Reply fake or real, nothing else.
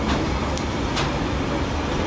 real